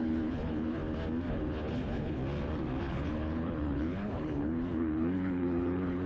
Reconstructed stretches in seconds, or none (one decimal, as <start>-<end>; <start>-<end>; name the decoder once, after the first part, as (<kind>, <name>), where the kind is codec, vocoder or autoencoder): 0.0-0.8 (codec, HILCodec); 1.3-2.2; 2.8-6.1